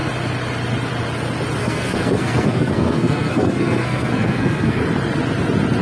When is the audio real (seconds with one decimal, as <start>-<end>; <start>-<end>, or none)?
0.0-1.6; 4.8-5.8